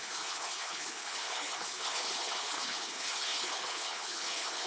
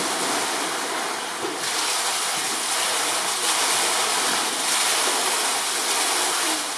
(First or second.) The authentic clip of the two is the second